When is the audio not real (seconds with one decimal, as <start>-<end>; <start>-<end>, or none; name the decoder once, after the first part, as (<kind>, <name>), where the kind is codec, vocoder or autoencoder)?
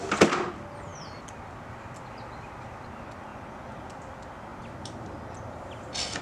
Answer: none